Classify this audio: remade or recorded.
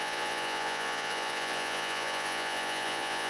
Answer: remade